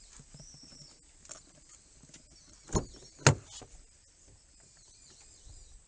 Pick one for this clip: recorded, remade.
recorded